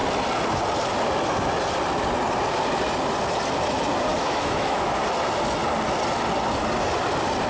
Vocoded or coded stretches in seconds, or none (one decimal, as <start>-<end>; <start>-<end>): 4.1-5.0

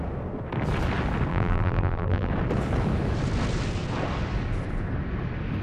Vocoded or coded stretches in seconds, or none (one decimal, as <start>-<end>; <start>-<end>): 1.3-2.3

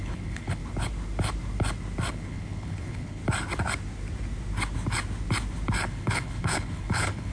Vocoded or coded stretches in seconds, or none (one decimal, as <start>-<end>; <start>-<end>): 0.0-0.6; 2.1-3.2; 5.9-7.3